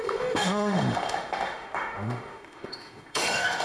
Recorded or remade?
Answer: remade